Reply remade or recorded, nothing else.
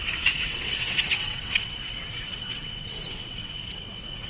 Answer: remade